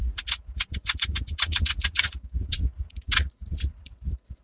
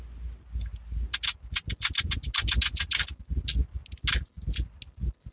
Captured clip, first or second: second